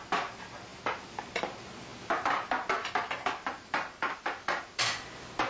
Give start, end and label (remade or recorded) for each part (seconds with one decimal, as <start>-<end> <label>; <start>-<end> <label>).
0.0-5.5 recorded